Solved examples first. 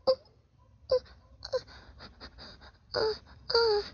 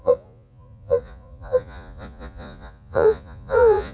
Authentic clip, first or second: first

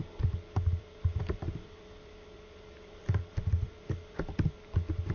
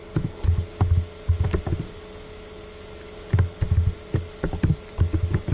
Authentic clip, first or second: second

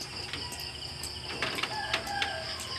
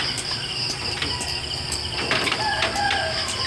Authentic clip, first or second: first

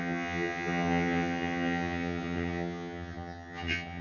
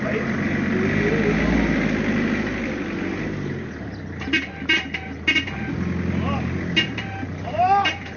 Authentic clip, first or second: second